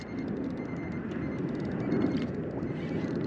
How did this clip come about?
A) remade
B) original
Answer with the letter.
B